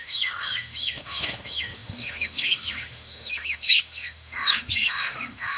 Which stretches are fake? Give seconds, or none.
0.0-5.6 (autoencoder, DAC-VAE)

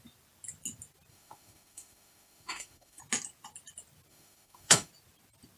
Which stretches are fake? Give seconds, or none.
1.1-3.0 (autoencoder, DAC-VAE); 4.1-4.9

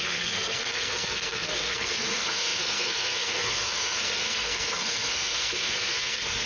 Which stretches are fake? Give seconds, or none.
0.0-6.5 (codec, SNAC)